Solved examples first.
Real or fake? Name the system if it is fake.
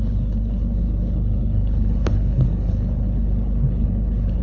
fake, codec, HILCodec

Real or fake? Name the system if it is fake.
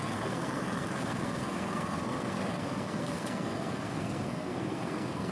fake, codec, SNAC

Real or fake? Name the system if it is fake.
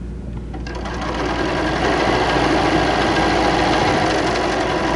real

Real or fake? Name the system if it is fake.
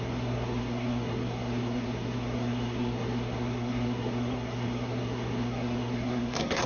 fake, codec, SNAC